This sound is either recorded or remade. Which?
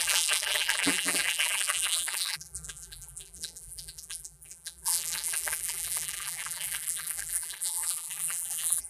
remade